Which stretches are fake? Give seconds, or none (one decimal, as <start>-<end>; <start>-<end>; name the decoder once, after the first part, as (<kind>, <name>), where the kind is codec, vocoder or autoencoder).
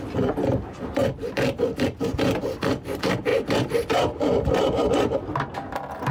1.0-2.9 (vocoder, BigVGAN v2); 3.3-4.5